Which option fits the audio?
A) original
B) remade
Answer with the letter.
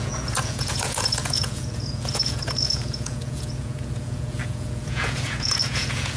B